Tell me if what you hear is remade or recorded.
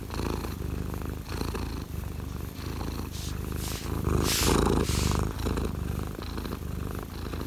recorded